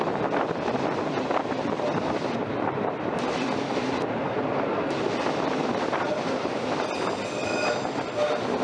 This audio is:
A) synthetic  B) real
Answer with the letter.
B